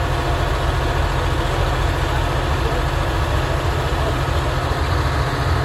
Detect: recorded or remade recorded